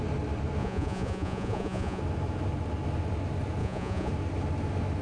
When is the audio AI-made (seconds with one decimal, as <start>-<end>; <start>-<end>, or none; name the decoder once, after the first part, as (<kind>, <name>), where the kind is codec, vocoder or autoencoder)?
0.6-2.0 (vocoder, Vocos); 3.6-4.1